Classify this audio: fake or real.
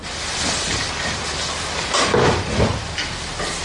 real